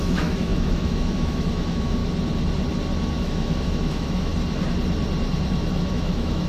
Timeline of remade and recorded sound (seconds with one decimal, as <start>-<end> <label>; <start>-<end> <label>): 0.0-2.0 remade; 2.0-3.2 recorded; 3.2-4.3 remade; 4.3-5.9 recorded; 5.9-6.5 remade